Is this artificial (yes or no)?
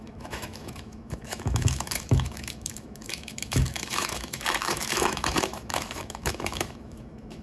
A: yes